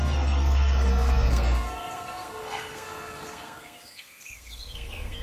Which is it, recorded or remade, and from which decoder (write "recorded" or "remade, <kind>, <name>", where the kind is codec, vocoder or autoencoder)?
remade, codec, SNAC